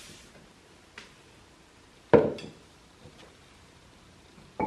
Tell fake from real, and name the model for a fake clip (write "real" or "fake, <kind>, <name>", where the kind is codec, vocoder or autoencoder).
real